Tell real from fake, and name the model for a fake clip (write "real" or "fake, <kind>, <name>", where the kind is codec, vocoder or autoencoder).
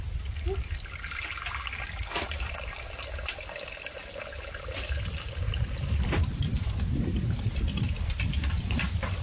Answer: real